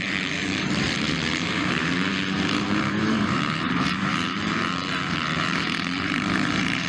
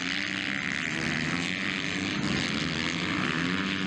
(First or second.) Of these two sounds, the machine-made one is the first